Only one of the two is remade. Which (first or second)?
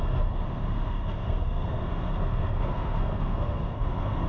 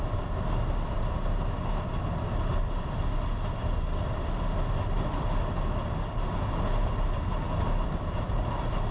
first